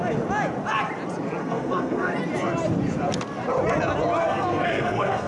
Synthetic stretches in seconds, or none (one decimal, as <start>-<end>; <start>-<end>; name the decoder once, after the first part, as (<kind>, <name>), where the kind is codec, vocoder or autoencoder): 1.4-2.1 (codec, SNAC); 4.2-5.3